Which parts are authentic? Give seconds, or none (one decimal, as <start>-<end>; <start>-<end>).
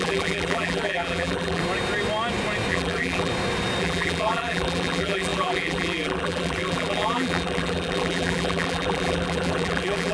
1.6-2.7; 3.3-3.8